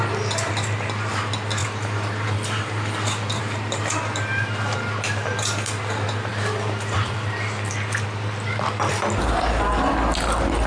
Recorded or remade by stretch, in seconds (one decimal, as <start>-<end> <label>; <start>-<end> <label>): 0.0-1.6 recorded; 1.6-3.4 remade; 3.4-6.3 recorded; 6.3-7.7 remade; 7.7-10.7 recorded